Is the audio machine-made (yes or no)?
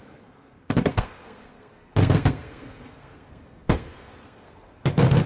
yes